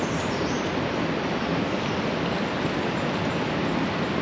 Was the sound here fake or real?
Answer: real